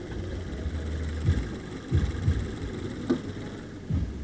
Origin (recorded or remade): recorded